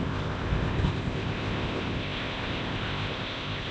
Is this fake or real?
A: fake